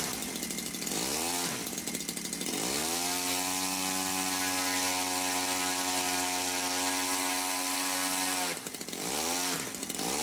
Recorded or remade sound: recorded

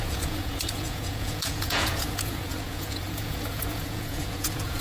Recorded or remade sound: remade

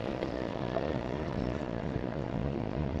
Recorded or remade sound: remade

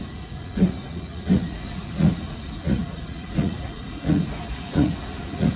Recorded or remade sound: remade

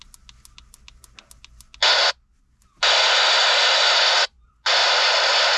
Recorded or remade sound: recorded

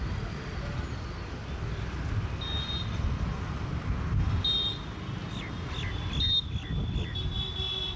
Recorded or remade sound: recorded